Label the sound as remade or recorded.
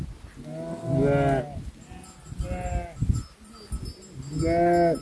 recorded